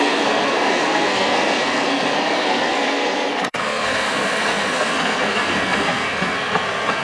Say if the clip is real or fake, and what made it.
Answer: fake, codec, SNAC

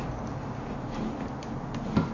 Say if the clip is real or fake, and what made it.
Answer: real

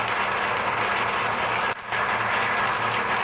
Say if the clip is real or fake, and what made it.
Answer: real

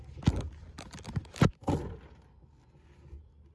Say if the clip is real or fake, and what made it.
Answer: real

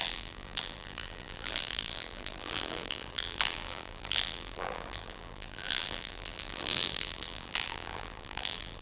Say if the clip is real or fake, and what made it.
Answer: fake, vocoder, BigVGAN v2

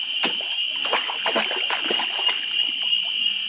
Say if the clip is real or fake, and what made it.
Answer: real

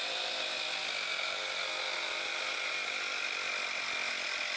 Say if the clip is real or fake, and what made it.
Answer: real